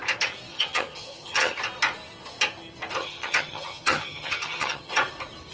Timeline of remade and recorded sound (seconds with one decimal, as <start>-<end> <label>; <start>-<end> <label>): 0.0-0.5 recorded; 0.5-1.6 remade; 1.6-3.0 recorded; 3.0-4.9 remade; 4.9-5.5 recorded